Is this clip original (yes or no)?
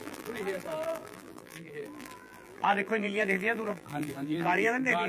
no